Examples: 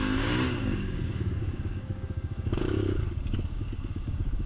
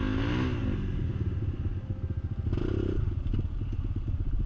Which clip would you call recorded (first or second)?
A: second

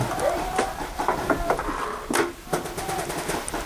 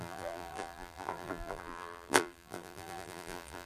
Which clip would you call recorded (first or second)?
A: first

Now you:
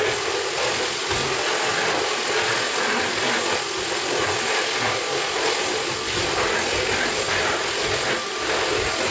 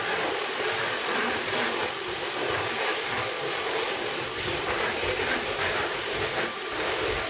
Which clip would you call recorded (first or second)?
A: first